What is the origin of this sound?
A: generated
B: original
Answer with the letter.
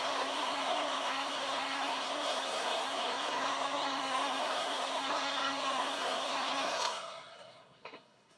A